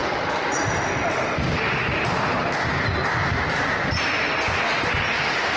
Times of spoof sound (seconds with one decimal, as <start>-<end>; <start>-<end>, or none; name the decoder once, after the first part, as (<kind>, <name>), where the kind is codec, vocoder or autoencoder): 0.0-2.3 (vocoder, BigVGAN v2)